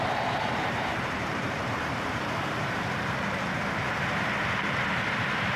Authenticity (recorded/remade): remade